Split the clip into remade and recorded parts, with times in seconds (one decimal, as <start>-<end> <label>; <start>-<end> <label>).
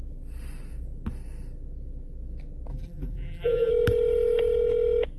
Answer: 0.0-2.7 recorded; 2.7-3.7 remade; 3.7-5.2 recorded